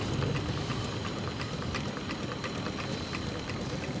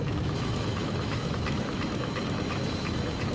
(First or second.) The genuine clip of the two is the first